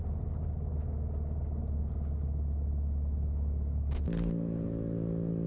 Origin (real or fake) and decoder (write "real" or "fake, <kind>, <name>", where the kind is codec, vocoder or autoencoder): real